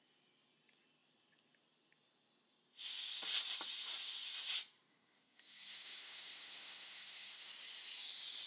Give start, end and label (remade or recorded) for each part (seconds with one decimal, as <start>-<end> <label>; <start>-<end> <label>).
0.0-4.9 recorded; 4.9-7.5 remade; 7.5-8.5 recorded